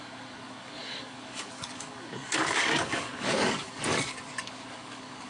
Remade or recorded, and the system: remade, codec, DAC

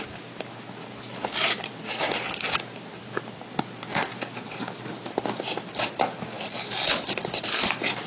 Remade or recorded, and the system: recorded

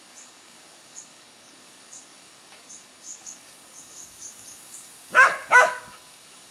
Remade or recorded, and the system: remade, codec, DAC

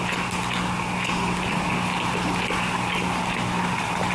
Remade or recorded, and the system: recorded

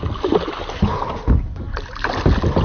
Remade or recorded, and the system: recorded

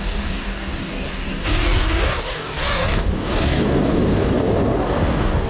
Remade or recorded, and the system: remade, codec, DAC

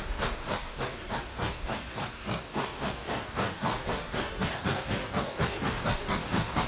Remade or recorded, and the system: remade, codec, DAC